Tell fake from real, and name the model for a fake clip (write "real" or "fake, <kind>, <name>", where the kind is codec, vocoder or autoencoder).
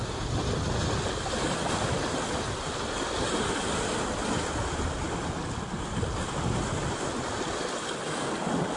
real